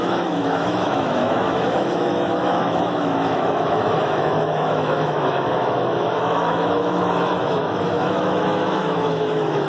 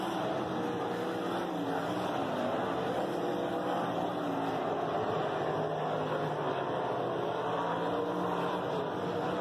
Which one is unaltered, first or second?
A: second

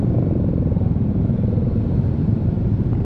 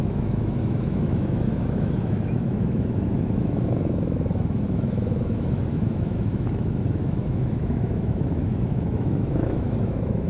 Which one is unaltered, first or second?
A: first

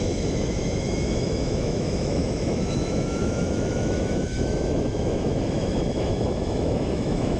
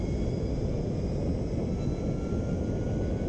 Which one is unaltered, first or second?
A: second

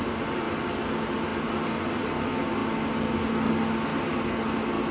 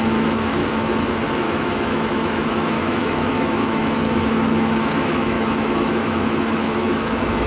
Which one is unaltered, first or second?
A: first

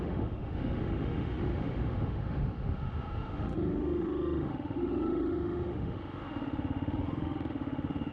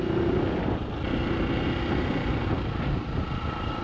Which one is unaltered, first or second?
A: second